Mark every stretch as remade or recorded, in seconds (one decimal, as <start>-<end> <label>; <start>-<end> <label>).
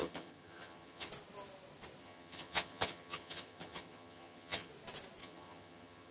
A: 0.0-1.1 remade; 1.1-2.0 recorded; 2.0-4.7 remade; 4.7-5.2 recorded; 5.2-6.1 remade